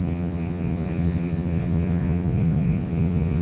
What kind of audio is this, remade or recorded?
remade